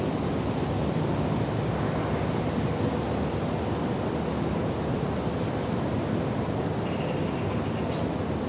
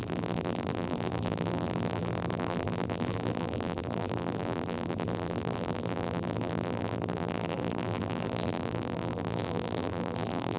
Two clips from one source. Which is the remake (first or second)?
second